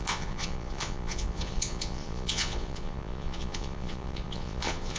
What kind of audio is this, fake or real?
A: fake